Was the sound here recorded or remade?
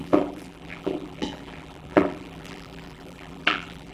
remade